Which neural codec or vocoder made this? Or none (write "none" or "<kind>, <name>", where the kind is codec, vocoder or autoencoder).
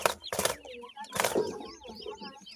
none